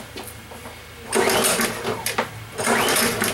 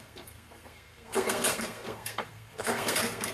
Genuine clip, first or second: first